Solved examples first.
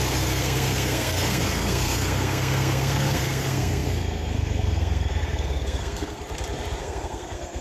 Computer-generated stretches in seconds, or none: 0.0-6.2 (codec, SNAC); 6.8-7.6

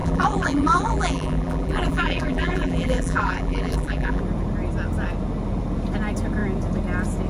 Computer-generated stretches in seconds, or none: 0.0-4.2 (vocoder, BigVGAN v2)

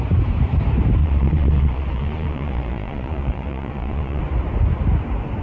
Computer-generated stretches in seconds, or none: 1.0-4.2 (vocoder, Vocos)

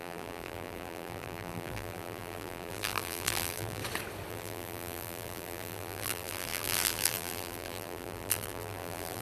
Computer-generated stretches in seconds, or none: 0.0-3.8 (vocoder, BigVGAN v2); 4.3-9.2

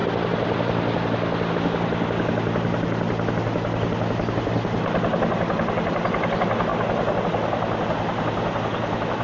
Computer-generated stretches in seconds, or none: none

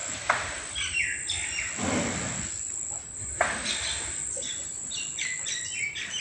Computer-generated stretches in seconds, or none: none